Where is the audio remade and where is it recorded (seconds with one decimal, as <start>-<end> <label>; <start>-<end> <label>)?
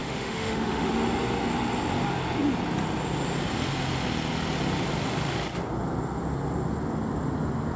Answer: 0.0-0.9 remade; 0.9-7.8 recorded